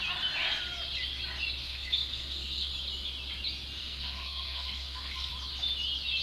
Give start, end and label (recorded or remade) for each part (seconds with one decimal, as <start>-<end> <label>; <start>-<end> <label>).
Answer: 0.0-1.6 recorded; 1.6-2.7 remade; 2.7-3.8 recorded; 3.8-5.3 remade; 5.3-6.2 recorded